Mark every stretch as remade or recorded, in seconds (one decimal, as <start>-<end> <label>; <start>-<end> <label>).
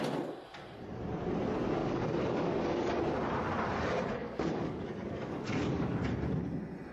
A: 0.0-1.8 recorded; 1.8-3.0 remade; 3.0-4.2 recorded; 4.2-6.0 remade; 6.0-6.9 recorded